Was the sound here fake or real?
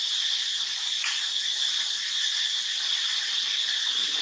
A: real